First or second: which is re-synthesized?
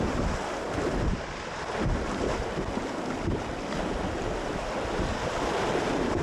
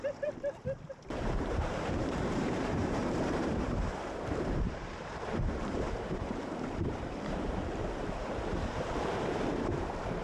second